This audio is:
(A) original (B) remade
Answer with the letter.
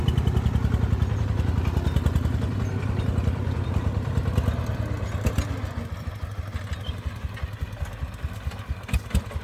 A